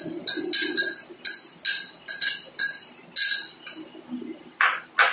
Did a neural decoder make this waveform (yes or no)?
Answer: no